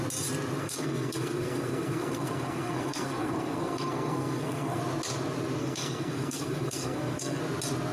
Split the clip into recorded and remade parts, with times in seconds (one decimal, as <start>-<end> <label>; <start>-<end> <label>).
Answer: 0.0-0.6 recorded; 0.6-4.8 remade; 4.8-5.6 recorded; 5.6-7.4 remade; 7.4-7.9 recorded